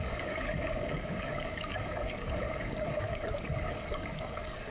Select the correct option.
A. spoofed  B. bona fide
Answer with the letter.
A